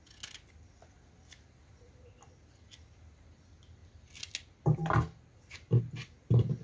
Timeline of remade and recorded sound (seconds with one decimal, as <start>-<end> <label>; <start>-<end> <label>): 0.0-6.6 recorded